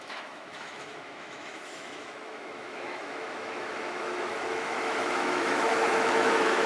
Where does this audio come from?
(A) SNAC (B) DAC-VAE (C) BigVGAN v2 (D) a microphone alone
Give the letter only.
B